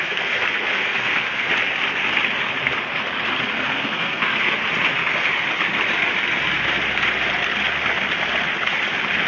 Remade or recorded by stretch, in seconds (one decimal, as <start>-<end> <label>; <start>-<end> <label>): 0.0-1.5 remade; 1.5-3.7 recorded; 3.7-4.6 remade; 4.6-9.3 recorded